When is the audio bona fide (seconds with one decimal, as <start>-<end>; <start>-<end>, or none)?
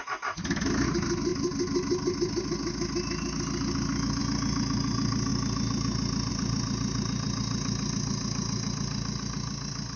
0.0-10.0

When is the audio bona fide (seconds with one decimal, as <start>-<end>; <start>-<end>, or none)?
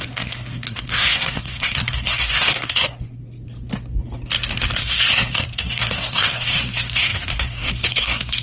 3.2-4.8